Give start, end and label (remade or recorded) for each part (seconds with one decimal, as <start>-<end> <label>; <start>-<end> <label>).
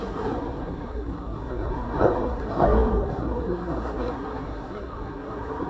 0.0-5.7 remade